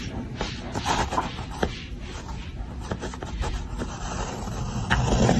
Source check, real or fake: real